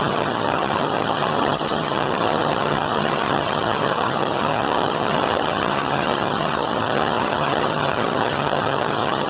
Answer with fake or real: fake